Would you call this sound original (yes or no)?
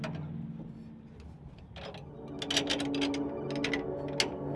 yes